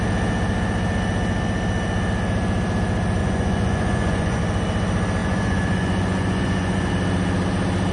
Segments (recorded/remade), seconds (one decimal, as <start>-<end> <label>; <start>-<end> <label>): 0.0-3.2 recorded; 3.2-4.4 remade; 4.4-5.2 recorded; 5.2-6.9 remade; 6.9-7.9 recorded